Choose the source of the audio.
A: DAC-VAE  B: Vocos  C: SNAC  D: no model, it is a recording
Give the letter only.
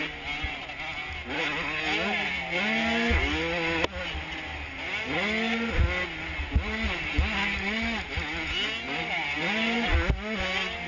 D